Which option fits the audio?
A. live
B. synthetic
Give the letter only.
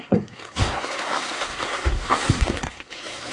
B